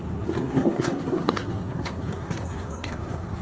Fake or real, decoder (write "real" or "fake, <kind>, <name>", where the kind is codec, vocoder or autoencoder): fake, codec, SNAC